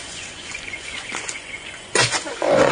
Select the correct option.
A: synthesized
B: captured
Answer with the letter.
A